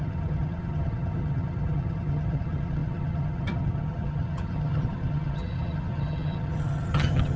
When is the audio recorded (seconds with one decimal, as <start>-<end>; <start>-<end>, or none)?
none